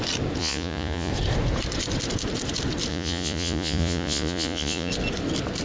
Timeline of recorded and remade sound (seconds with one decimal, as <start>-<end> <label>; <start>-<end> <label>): 0.0-0.4 recorded; 0.4-1.1 remade; 1.1-2.9 recorded; 2.9-4.9 remade; 4.9-5.6 recorded